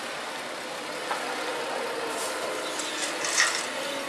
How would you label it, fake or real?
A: real